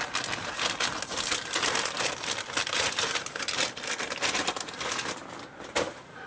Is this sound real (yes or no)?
yes